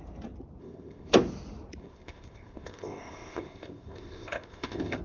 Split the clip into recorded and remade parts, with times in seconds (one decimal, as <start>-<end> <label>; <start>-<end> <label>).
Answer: 0.0-0.6 recorded; 0.6-1.1 remade; 1.1-1.8 recorded; 1.8-5.0 remade